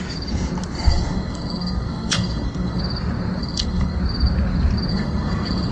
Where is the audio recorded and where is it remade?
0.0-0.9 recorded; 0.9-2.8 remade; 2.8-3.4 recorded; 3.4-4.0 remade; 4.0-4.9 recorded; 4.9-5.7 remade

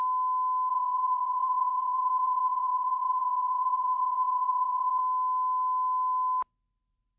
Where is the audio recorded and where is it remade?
0.0-0.7 recorded; 0.7-5.0 remade; 5.0-7.2 recorded

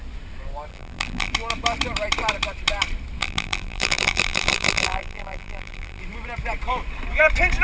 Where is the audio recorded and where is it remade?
0.0-0.7 recorded; 0.7-1.3 remade; 1.3-3.2 recorded; 3.2-6.0 remade; 6.0-7.6 recorded

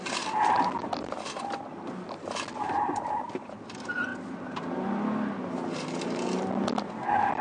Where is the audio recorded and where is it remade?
0.0-7.4 recorded

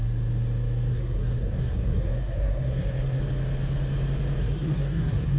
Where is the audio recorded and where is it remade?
0.0-0.9 recorded; 0.9-3.2 remade; 3.2-4.4 recorded; 4.4-5.4 remade